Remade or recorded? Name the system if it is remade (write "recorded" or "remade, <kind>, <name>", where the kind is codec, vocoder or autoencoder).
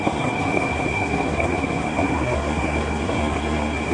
remade, codec, SNAC